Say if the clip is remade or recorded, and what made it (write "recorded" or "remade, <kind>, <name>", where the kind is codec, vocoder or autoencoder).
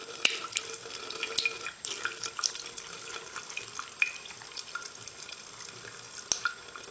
recorded